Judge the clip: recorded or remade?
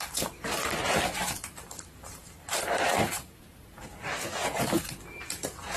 remade